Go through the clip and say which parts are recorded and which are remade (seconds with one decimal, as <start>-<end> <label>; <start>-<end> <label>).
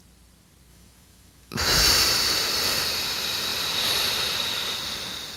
0.0-0.7 recorded; 0.7-1.8 remade; 1.8-5.4 recorded